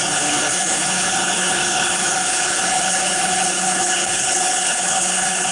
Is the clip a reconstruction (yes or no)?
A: yes